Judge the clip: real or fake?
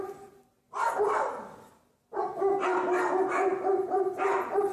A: real